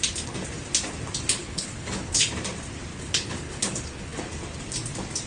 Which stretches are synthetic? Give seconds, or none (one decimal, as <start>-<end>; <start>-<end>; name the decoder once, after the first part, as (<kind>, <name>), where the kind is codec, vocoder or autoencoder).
1.4-2.3 (codec, HILCodec); 2.9-4.2